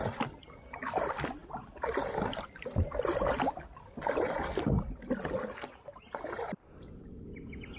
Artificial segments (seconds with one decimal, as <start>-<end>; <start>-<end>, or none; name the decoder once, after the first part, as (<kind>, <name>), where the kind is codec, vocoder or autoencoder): none